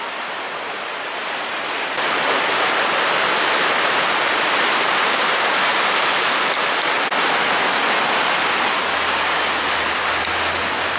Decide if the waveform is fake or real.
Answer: real